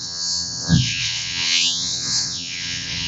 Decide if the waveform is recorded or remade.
remade